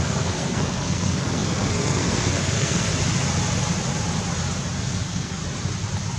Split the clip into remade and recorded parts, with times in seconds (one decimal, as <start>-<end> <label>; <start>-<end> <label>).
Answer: 0.0-2.9 remade; 2.9-4.8 recorded; 4.8-5.4 remade; 5.4-6.2 recorded